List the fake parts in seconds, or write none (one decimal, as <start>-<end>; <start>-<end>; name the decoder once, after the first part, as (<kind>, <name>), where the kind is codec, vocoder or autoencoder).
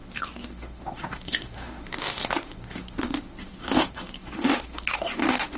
0.0-5.6 (autoencoder, DAC-VAE)